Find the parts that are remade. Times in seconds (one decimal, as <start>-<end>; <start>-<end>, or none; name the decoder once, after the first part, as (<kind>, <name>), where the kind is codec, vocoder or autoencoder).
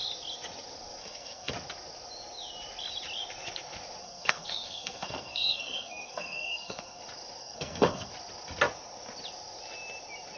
1.0-1.5 (codec, SNAC); 4.0-7.0; 7.4-8.1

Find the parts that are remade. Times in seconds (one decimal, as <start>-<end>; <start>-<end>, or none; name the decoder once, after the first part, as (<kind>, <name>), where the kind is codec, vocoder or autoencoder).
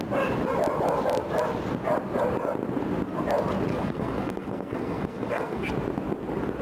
3.7-5.7 (codec, SNAC)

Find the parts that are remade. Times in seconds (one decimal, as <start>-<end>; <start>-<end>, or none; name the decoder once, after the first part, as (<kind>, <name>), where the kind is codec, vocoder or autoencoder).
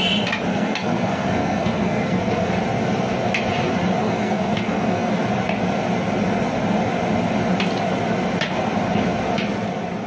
0.5-2.5 (codec, SNAC); 4.0-5.1